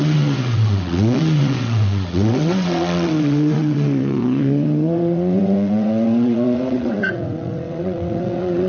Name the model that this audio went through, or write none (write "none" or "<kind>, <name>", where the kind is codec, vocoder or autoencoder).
vocoder, WaveNeXt